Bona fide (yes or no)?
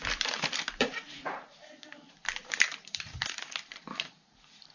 no